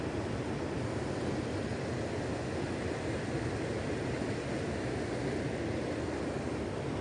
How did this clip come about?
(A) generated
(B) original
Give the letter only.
B